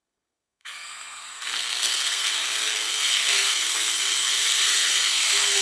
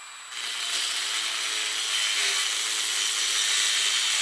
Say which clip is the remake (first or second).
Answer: first